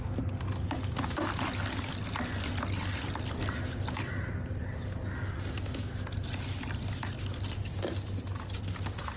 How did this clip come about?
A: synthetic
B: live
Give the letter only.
B